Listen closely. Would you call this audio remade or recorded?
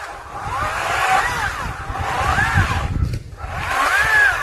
recorded